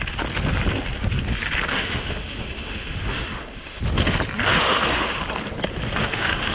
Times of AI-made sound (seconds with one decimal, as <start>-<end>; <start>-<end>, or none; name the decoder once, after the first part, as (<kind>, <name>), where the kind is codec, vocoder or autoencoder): 1.7-3.8 (autoencoder, DAC-VAE); 4.5-5.2; 6.0-6.5